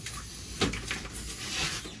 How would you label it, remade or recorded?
recorded